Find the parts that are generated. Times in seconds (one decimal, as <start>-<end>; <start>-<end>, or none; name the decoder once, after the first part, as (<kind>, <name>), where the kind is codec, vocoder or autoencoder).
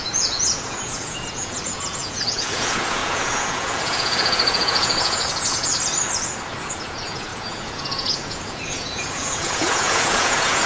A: 0.0-5.7 (vocoder, Vocos); 6.6-10.7